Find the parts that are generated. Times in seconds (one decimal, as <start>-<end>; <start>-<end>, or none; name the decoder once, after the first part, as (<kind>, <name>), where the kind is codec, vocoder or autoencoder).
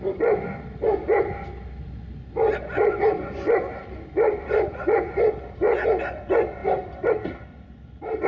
4.4-5.1 (vocoder, Vocos)